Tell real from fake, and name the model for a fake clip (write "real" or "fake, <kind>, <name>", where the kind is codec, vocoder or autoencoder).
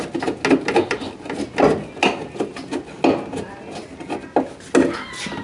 real